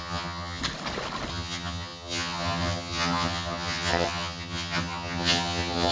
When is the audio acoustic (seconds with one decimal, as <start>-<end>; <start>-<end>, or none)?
0.6-1.3